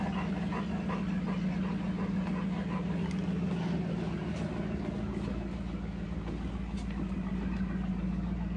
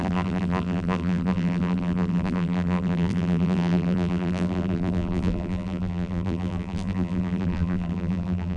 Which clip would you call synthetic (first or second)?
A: second